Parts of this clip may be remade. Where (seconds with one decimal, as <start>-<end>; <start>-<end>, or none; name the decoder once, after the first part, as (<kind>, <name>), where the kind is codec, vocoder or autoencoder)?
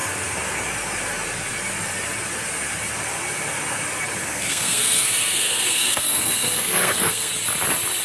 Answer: 4.2-7.3 (codec, SNAC)